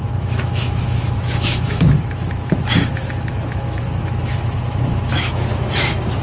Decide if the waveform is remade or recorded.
remade